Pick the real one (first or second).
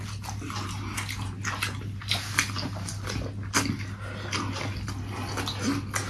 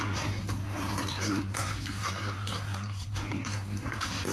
first